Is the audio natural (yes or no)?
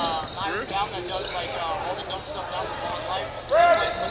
yes